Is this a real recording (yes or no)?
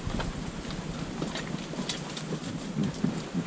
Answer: yes